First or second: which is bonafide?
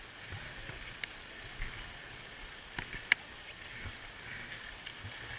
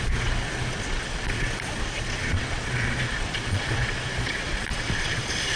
first